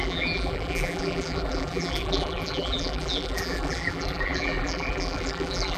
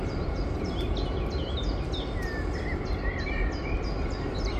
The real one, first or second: second